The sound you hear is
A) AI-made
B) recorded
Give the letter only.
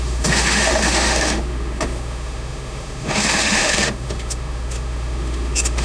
A